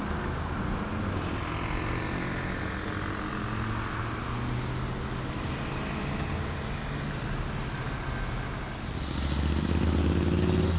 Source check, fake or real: real